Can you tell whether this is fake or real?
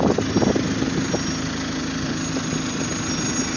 real